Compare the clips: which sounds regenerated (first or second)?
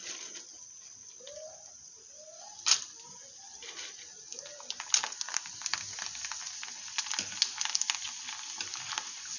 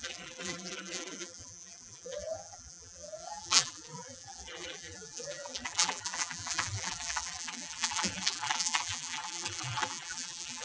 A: second